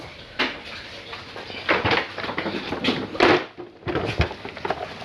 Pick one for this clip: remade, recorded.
recorded